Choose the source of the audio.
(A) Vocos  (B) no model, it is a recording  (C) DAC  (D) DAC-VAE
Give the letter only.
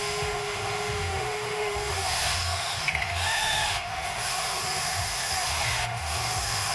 D